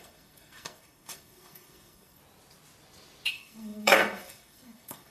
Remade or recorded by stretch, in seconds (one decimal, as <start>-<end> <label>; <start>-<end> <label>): 0.0-2.2 remade; 2.2-3.3 recorded; 3.3-5.1 remade